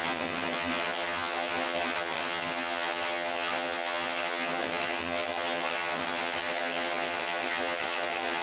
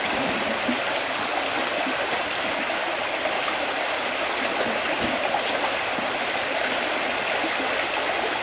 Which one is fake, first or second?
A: first